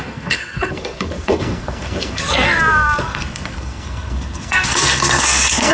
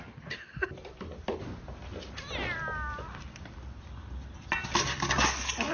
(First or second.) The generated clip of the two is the first